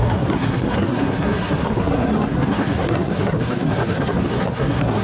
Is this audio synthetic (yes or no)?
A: yes